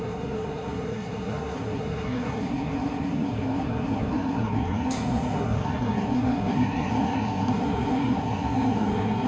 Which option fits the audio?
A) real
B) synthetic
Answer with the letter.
B